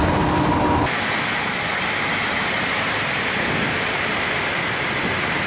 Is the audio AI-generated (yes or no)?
no